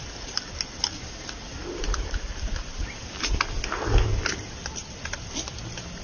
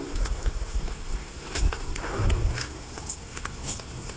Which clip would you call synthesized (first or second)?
second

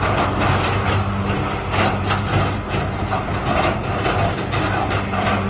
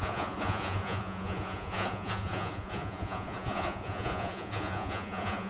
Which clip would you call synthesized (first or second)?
second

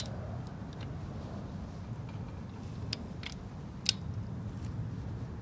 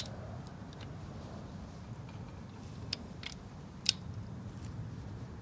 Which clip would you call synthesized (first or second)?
second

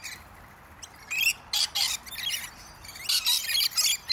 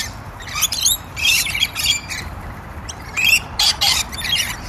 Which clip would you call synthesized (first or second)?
second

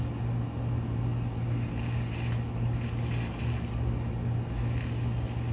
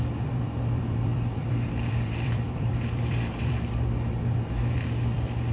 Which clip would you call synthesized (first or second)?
second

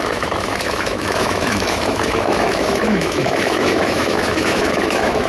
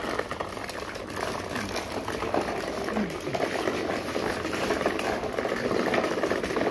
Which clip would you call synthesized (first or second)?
first